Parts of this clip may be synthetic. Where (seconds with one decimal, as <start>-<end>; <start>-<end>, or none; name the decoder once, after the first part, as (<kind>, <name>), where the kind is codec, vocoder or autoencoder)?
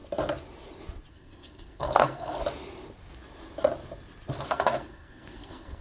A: 1.1-2.4 (codec, SNAC); 4.5-5.8